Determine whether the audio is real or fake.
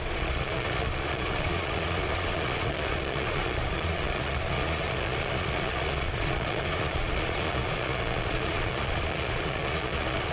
fake